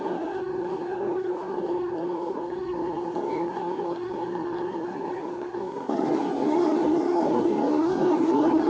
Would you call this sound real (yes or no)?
no